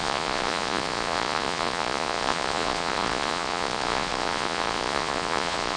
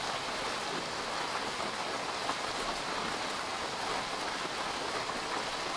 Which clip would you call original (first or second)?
second